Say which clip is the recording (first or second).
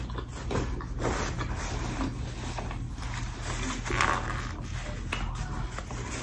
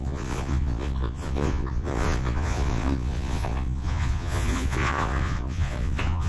first